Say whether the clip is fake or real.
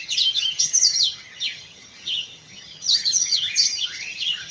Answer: fake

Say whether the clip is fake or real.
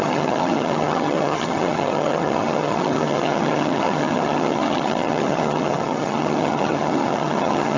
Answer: fake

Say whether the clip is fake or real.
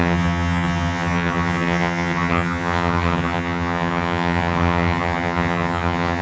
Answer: fake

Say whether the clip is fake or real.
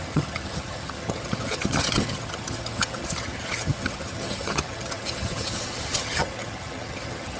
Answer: fake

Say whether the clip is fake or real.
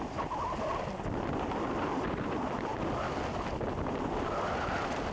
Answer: real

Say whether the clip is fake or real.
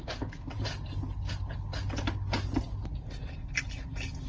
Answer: real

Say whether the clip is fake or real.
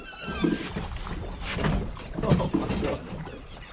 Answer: real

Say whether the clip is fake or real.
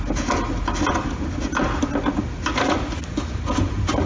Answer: real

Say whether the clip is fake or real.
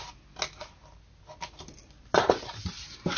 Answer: real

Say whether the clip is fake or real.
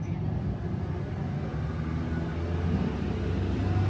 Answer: real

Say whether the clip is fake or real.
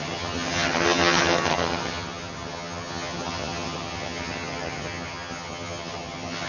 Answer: fake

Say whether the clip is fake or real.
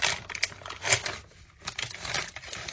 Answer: real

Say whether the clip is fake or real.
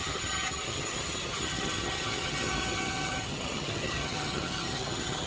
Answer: fake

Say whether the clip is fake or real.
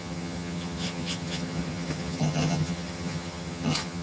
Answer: fake